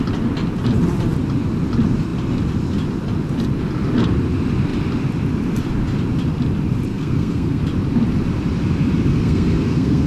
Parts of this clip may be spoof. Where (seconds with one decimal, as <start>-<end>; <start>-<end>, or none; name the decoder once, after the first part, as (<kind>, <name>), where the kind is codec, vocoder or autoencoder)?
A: 6.9-7.6 (codec, SNAC); 9.1-10.1